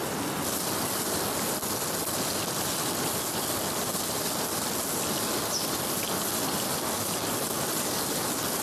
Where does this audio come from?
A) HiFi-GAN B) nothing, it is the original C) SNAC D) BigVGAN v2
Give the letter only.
B